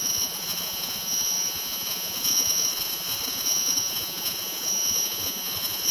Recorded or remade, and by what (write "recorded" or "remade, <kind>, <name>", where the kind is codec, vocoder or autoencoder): remade, vocoder, Vocos